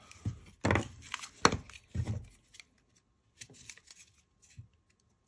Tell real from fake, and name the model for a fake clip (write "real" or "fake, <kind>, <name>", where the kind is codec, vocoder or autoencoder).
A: real